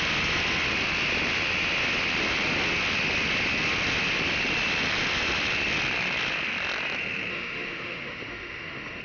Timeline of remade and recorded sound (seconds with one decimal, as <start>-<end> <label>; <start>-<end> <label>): 0.0-7.3 recorded; 7.3-9.0 remade